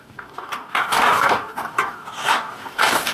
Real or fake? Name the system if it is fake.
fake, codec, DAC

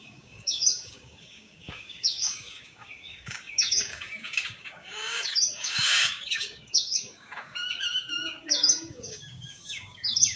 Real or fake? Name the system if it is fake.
fake, codec, DAC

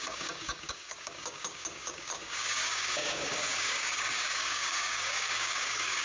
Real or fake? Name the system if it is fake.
fake, codec, DAC